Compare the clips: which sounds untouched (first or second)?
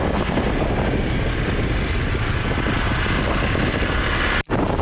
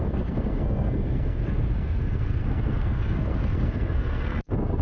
first